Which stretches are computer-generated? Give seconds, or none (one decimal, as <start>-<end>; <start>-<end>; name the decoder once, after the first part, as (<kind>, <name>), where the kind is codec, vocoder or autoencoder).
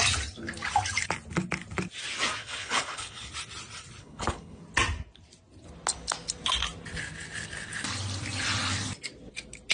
2.4-3.3 (codec, HILCodec); 4.0-4.6